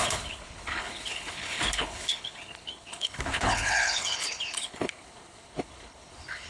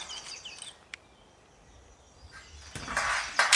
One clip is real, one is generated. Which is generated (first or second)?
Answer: first